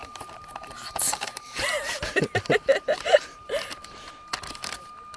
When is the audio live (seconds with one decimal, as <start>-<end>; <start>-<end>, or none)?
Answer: 2.0-2.7; 4.1-5.2